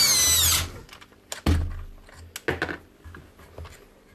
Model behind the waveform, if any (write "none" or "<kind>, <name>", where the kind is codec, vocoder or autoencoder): none